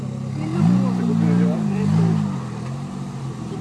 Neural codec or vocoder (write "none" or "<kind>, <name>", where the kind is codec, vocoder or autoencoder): none